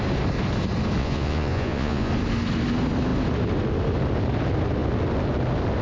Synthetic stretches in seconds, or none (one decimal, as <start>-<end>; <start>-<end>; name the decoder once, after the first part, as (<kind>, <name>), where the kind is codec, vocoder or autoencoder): 1.0-2.1 (vocoder, Vocos)